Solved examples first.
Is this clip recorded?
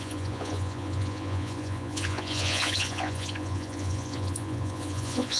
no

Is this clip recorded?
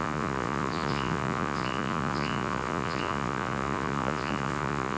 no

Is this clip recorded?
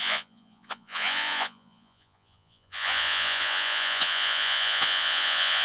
no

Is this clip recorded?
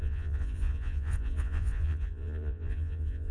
no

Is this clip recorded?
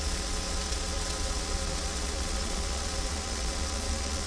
no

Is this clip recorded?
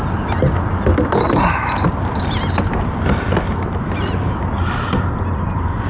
yes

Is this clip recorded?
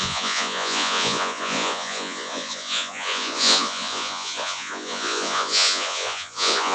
no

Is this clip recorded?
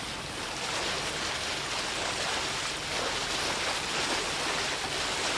yes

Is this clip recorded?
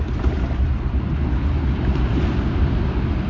yes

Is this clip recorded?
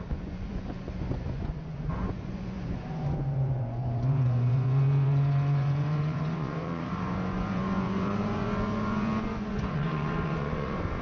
no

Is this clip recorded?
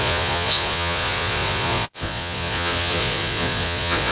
no